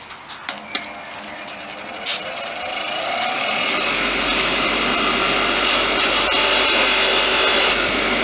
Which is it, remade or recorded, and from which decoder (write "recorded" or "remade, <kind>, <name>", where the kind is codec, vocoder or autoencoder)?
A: recorded